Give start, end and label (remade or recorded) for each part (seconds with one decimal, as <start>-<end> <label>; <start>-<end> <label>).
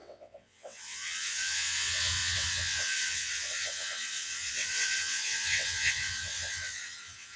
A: 0.0-7.4 remade